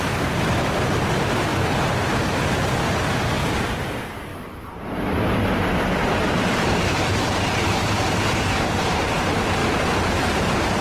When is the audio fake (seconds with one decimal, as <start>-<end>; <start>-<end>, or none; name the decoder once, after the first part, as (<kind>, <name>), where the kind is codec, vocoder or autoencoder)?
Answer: 0.0-9.6 (vocoder, BigVGAN v2); 10.1-10.8